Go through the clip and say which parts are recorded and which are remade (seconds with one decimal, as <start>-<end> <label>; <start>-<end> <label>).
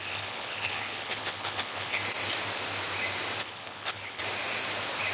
0.0-2.0 remade; 2.0-3.4 recorded; 3.4-4.2 remade; 4.2-5.1 recorded